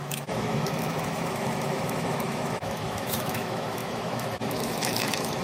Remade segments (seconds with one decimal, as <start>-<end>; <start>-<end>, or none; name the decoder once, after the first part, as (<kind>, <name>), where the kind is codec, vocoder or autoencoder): 0.0-5.4 (autoencoder, DAC-VAE)